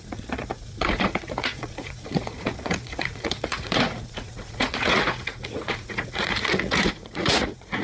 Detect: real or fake fake